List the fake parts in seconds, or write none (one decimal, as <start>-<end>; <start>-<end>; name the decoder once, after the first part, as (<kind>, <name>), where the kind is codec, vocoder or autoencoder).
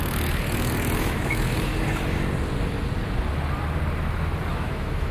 0.0-1.7 (autoencoder, DAC-VAE); 4.5-5.1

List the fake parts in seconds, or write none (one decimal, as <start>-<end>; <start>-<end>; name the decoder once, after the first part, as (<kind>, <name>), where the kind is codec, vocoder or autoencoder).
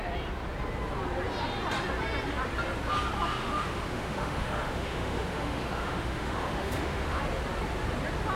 3.4-7.2 (autoencoder, DAC-VAE)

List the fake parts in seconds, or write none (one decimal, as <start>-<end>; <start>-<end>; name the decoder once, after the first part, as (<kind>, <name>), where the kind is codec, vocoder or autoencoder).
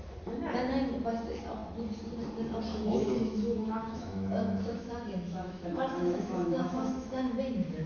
2.7-7.4 (autoencoder, DAC-VAE)